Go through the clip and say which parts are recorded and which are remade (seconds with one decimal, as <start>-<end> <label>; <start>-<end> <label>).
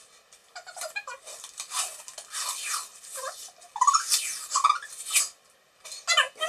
0.0-6.5 recorded